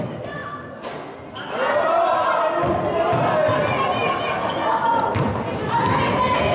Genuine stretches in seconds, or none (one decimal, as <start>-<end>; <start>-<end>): 0.0-6.5